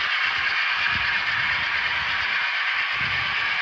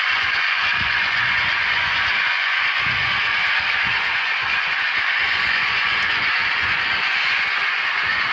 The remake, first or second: second